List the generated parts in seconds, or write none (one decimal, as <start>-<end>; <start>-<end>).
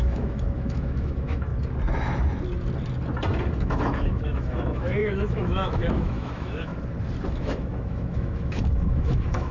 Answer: 0.0-1.5; 3.6-6.7; 7.3-9.5